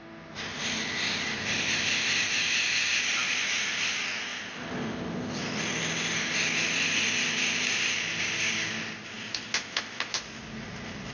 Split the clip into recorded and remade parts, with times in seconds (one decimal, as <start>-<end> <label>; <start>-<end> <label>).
0.0-11.1 recorded